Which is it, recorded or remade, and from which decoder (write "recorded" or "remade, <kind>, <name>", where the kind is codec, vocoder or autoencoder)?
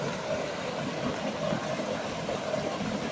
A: recorded